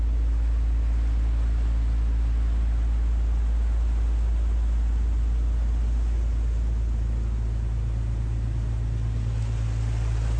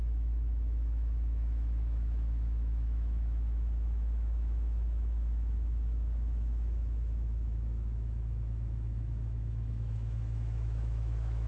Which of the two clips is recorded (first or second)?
first